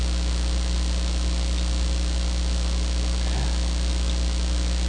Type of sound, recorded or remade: recorded